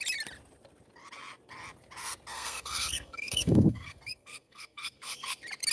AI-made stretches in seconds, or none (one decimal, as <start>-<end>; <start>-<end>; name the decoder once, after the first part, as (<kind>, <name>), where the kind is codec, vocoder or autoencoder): 2.3-5.3 (codec, SNAC)